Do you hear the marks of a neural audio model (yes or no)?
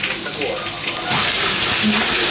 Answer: no